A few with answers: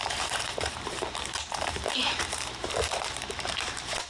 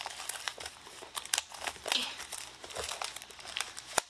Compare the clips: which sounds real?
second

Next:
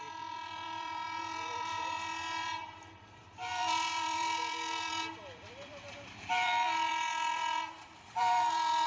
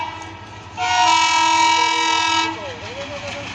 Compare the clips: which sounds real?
second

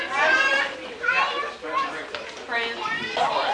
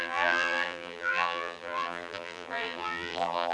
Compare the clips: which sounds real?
first